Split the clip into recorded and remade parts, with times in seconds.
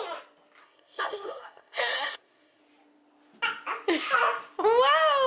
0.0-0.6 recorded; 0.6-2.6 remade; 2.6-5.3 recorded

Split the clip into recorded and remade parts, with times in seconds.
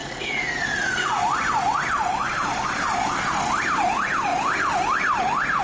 0.0-1.5 remade; 1.5-5.6 recorded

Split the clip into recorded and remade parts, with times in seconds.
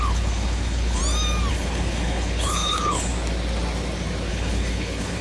0.0-1.0 remade; 1.0-1.5 recorded; 1.5-3.1 remade; 3.1-4.3 recorded; 4.3-5.2 remade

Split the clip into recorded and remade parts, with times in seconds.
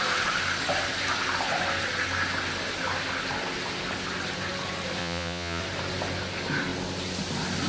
0.0-5.0 recorded; 5.0-5.6 remade; 5.6-7.7 recorded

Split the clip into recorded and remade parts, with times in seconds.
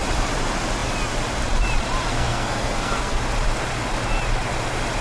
0.0-2.1 recorded; 2.1-3.2 remade; 3.2-5.0 recorded